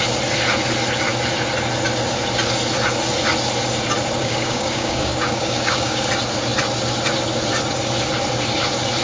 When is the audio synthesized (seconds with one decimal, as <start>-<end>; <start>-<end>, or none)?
4.2-6.1